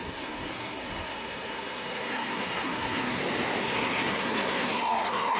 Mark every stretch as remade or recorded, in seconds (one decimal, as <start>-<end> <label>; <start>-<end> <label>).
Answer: 0.0-3.2 remade; 3.2-3.6 recorded; 3.6-5.4 remade